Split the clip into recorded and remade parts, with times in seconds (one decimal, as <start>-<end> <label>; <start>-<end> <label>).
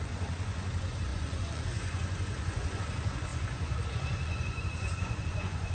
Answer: 0.0-5.7 remade